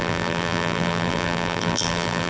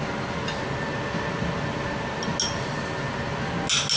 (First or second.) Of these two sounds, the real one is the second